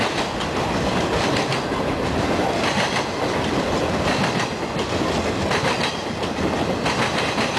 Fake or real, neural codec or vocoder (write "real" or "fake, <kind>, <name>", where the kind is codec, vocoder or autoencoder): real